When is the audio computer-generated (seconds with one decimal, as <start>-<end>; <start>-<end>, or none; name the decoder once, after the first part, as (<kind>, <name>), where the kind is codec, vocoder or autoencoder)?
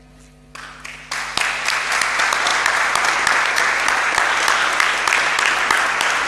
none